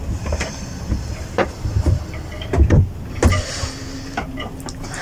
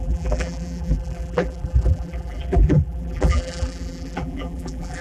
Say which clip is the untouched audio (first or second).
first